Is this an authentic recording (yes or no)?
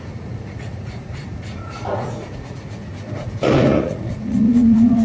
no